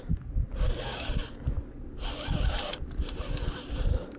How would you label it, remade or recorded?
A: recorded